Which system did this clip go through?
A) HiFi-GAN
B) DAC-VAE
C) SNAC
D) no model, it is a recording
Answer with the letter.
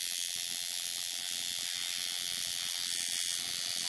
D